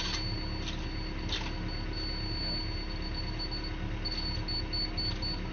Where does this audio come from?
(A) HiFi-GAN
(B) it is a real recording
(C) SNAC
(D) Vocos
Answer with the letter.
B